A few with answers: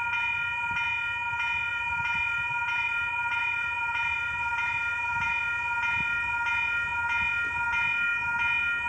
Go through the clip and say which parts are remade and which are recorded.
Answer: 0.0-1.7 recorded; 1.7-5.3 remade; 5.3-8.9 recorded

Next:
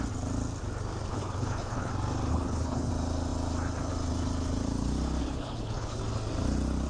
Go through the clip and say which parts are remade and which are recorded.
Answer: 0.0-1.1 recorded; 1.1-1.9 remade; 1.9-2.3 recorded; 2.3-2.9 remade; 2.9-5.2 recorded; 5.2-6.0 remade; 6.0-6.9 recorded

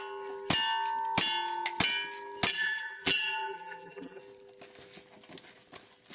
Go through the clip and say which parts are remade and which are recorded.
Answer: 0.0-2.5 recorded; 2.5-4.2 remade; 4.2-6.1 recorded

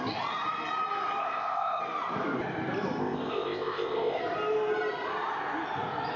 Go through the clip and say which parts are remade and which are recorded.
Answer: 0.0-1.2 recorded; 1.2-1.8 remade; 1.8-3.0 recorded; 3.0-4.2 remade; 4.2-6.2 recorded

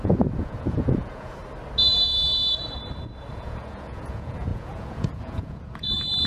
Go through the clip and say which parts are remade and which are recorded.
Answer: 0.0-1.4 remade; 1.4-3.3 recorded; 3.3-6.3 remade